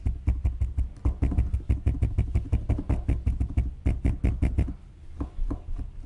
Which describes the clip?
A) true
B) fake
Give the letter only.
A